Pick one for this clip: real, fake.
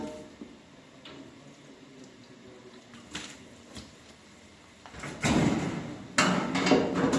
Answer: real